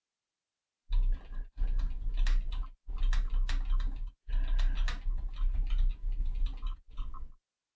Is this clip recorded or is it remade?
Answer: recorded